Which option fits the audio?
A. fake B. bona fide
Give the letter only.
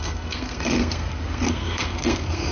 A